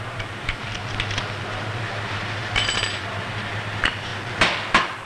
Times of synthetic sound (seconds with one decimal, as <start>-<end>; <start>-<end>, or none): 0.0-0.8; 1.4-4.1